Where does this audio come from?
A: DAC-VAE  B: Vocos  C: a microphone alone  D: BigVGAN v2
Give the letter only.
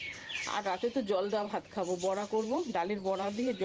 D